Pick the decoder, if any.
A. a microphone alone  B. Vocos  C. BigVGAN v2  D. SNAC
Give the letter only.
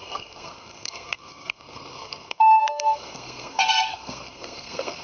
D